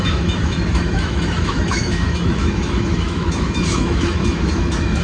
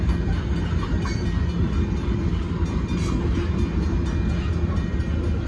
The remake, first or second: first